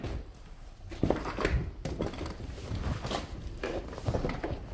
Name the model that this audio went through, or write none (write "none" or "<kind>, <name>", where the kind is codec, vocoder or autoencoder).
none